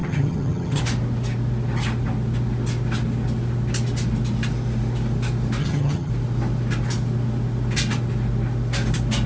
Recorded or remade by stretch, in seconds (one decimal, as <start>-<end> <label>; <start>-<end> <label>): 0.0-0.8 remade; 0.8-5.6 recorded; 5.6-6.1 remade; 6.1-9.3 recorded

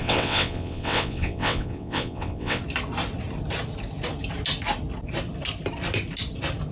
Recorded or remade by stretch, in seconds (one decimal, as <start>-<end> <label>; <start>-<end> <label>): 0.0-2.6 remade; 2.6-6.7 recorded

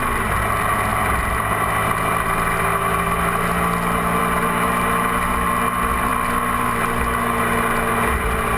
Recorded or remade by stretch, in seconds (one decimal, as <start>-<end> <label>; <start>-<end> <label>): 0.0-8.6 recorded

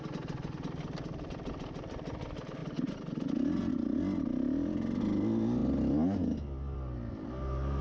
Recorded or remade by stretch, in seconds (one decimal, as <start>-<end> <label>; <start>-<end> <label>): 0.0-7.8 recorded

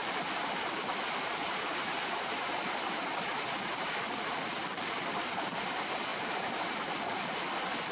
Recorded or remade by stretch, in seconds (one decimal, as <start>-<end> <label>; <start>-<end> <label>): 0.0-6.1 recorded; 6.1-6.9 remade; 6.9-7.9 recorded

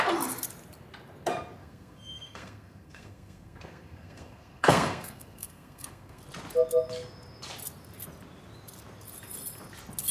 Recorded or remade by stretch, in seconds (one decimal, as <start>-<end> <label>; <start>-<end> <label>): 0.0-1.6 recorded; 1.6-6.2 remade; 6.2-10.1 recorded

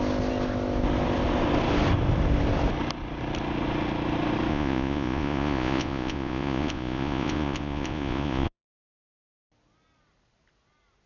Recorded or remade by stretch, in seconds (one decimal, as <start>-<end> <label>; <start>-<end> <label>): 0.0-4.5 recorded; 4.5-9.5 remade; 9.5-11.1 recorded

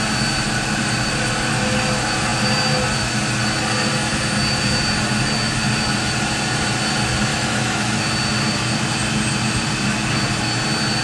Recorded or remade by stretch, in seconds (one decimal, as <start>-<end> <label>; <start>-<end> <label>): 0.0-7.3 recorded; 7.3-8.0 remade; 8.0-11.0 recorded